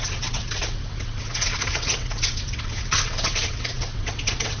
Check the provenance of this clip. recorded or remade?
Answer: remade